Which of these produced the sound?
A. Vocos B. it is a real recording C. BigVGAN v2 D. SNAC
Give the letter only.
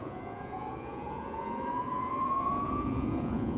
A